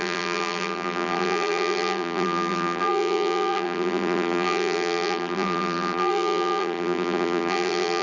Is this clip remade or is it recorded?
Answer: remade